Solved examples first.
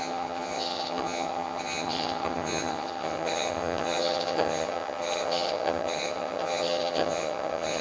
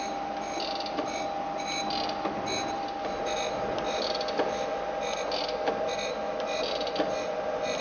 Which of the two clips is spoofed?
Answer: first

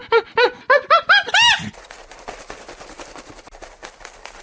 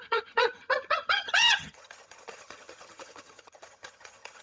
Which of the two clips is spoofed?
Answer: second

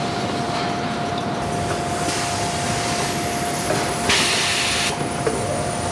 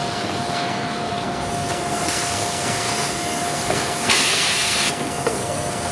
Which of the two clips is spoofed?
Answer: second